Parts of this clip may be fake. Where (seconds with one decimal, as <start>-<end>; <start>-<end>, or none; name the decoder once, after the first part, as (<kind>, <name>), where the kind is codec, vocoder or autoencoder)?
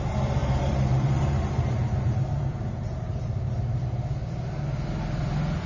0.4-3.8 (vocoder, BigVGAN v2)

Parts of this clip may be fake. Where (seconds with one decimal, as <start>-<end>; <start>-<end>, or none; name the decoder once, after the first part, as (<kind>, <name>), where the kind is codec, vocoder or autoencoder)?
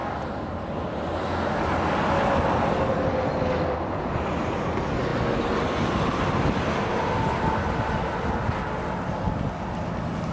0.0-0.9 (vocoder, BigVGAN v2)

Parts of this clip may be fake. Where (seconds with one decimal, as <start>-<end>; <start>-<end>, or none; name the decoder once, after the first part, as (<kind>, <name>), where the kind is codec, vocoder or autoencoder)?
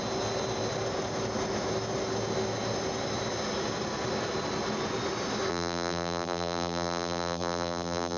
5.5-8.2 (vocoder, BigVGAN v2)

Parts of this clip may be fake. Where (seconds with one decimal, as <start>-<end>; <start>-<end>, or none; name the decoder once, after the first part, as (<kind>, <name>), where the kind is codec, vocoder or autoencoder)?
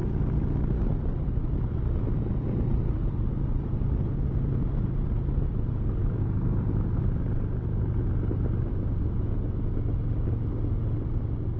none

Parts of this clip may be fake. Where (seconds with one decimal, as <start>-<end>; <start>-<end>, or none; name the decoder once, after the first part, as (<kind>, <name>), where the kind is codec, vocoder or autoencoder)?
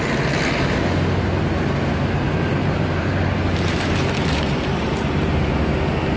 2.6-5.5 (vocoder, BigVGAN v2)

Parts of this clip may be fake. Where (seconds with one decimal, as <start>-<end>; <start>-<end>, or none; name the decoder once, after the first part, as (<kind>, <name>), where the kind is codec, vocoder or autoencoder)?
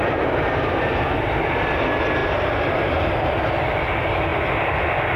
2.2-3.2 (vocoder, BigVGAN v2)